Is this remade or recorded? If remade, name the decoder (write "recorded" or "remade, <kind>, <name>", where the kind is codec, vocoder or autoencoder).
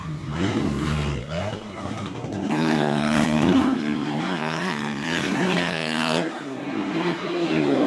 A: remade, codec, SNAC